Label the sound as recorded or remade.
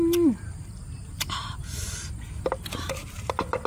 recorded